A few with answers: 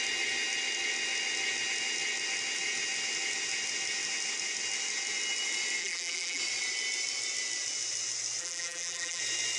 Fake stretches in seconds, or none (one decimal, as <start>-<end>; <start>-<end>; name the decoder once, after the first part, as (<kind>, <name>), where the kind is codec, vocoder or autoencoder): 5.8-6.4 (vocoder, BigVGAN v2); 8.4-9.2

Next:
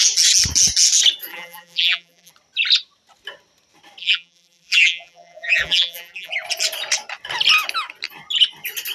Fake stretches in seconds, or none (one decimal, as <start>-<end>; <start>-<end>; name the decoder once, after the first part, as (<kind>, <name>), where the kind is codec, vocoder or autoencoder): 1.3-2.3 (vocoder, BigVGAN v2); 4.0-6.3

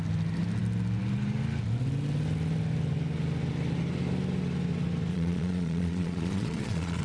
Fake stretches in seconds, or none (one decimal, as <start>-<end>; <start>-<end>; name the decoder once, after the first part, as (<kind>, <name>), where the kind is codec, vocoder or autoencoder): 5.1-7.0 (vocoder, Vocos)